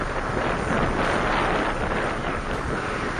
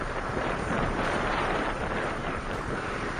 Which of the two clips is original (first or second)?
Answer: first